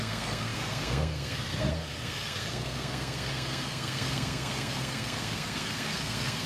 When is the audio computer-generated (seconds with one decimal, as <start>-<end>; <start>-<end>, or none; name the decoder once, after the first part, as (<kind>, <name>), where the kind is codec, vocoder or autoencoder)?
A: 0.0-6.5 (codec, SNAC)